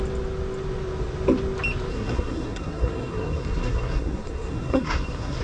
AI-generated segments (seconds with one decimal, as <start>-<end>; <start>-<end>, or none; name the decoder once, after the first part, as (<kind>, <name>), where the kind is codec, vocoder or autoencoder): 1.9-5.4 (codec, SNAC)